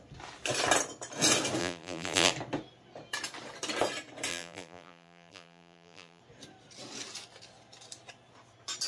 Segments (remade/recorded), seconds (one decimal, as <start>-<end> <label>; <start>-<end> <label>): 0.0-1.6 recorded; 1.6-2.3 remade; 2.3-4.3 recorded; 4.3-6.2 remade; 6.2-8.9 recorded

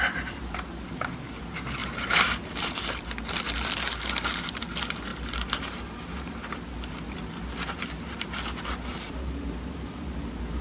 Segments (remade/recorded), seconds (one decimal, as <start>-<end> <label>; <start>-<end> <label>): 0.0-1.8 recorded; 1.8-3.0 remade; 3.0-5.1 recorded; 5.1-6.5 remade; 6.5-10.6 recorded

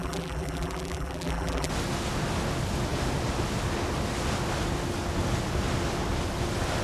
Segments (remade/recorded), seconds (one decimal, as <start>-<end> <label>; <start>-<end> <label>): 0.0-1.7 remade; 1.7-6.8 recorded